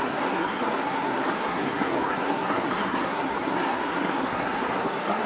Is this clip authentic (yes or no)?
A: no